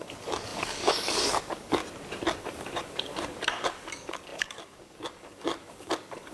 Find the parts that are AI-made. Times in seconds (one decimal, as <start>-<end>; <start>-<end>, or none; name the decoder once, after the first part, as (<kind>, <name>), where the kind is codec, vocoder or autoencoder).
0.0-1.8 (codec, DAC); 2.4-6.3